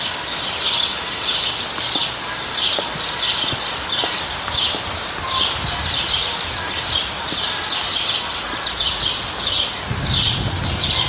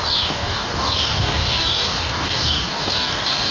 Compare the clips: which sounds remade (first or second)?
second